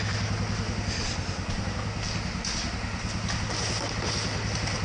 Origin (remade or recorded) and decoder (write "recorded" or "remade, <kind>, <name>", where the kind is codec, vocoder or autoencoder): recorded